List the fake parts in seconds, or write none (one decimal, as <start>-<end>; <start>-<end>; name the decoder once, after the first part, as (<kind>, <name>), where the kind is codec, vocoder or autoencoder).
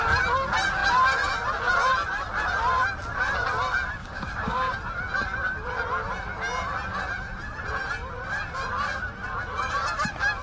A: 4.0-4.7 (codec, DAC)